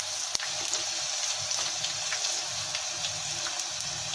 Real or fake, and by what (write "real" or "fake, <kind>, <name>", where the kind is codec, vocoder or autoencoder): real